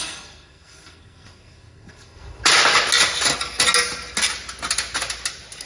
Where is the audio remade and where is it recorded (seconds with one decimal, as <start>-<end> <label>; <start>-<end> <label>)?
0.0-2.4 remade; 2.4-5.7 recorded

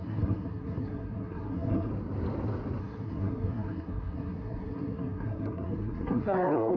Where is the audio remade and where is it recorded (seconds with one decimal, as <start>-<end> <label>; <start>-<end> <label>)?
0.0-1.9 remade; 1.9-2.8 recorded; 2.8-6.8 remade